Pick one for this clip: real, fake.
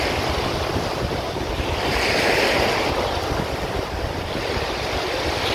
real